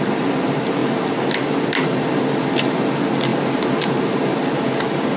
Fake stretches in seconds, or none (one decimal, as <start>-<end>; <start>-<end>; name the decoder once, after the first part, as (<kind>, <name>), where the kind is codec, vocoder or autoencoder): none